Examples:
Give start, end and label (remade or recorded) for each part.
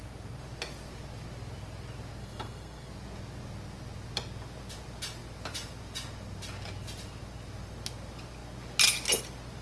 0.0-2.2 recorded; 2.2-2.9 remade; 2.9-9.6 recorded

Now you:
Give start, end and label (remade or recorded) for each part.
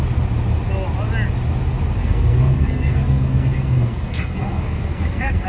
0.0-2.0 recorded; 2.0-5.5 remade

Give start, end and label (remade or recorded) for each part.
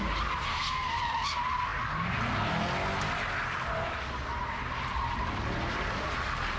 0.0-0.5 recorded; 0.5-1.0 remade; 1.0-6.6 recorded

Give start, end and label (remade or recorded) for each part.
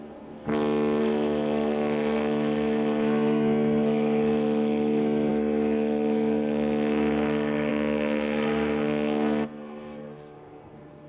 0.0-0.5 remade; 0.5-1.0 recorded; 1.0-11.1 remade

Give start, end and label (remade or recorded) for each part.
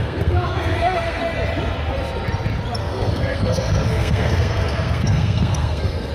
0.0-1.2 remade; 1.2-2.8 recorded; 2.8-6.1 remade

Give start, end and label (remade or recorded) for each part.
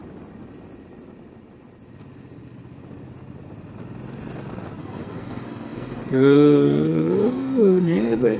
0.0-4.8 recorded; 4.8-8.4 remade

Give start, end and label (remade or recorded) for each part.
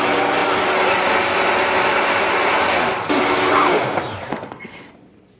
0.0-4.3 recorded; 4.3-4.9 remade; 4.9-5.4 recorded